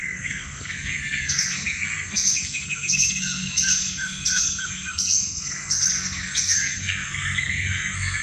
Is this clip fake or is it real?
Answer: fake